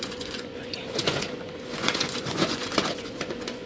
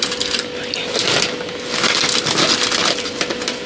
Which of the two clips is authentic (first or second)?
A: second